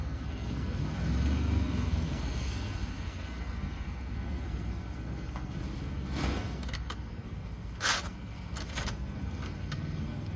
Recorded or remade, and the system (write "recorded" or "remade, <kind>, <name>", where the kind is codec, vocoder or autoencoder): remade, codec, SNAC